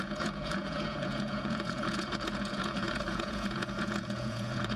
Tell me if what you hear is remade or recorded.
remade